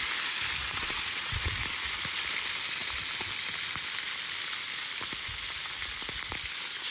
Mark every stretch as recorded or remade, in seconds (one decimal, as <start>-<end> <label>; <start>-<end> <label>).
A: 0.0-0.6 recorded; 0.6-1.5 remade; 1.5-6.9 recorded